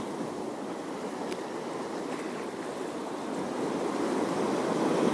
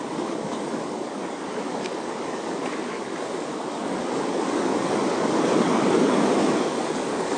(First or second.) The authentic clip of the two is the first